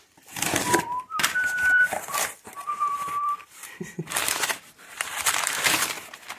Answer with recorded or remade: remade